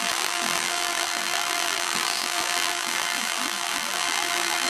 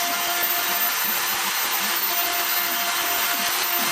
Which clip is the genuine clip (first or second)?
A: second